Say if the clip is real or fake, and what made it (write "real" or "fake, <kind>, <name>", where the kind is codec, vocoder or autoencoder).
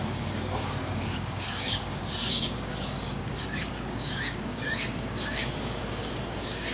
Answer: fake, codec, DAC